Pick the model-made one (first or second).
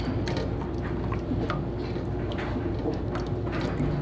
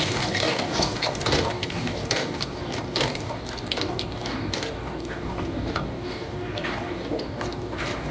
second